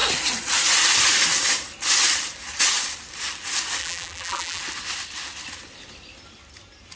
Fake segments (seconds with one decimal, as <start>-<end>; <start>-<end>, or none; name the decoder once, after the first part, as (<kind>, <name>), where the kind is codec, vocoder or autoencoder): 3.8-4.6 (vocoder, BigVGAN v2)